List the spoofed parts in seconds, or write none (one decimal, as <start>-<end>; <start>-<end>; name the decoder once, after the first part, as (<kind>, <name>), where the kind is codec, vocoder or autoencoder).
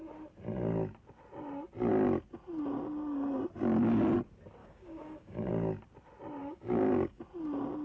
4.6-5.5 (codec, DAC); 6.4-7.2